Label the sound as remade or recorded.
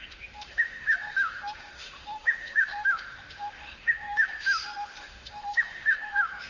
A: remade